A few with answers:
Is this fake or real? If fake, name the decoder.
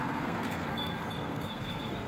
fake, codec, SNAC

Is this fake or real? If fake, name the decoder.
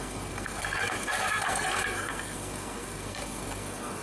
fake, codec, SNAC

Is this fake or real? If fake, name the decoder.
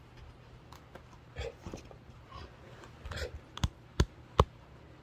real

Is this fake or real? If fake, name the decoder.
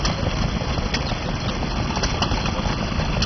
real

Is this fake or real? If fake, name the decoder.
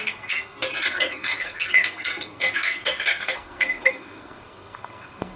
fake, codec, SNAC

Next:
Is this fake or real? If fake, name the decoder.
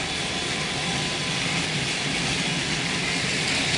real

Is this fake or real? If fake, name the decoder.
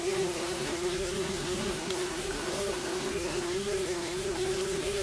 fake, codec, SNAC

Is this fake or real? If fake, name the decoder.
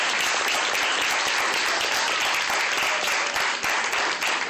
real